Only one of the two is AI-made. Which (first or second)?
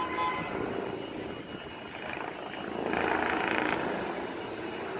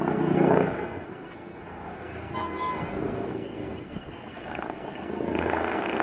second